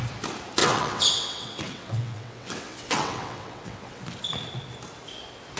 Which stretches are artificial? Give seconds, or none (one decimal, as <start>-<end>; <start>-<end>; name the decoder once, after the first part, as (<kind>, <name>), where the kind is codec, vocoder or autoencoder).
0.6-4.0 (vocoder, WaveNeXt)